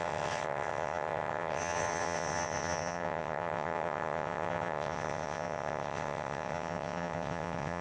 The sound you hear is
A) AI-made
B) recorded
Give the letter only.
A